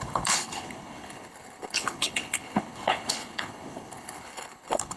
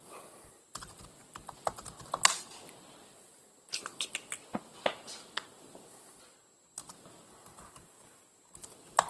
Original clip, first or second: second